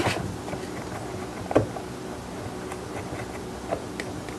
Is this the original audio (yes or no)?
yes